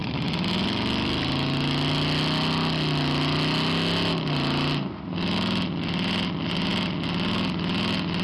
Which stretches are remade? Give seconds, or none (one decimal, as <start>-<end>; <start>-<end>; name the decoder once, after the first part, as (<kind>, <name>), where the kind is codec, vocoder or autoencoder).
none